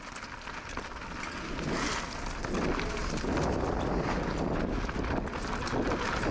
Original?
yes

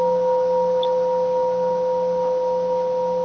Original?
yes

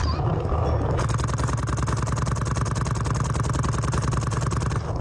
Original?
yes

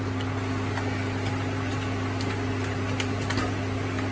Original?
yes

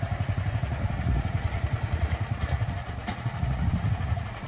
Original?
no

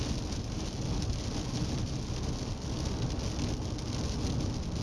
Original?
yes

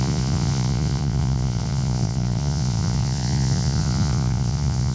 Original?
no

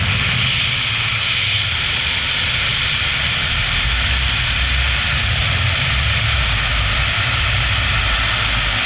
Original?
yes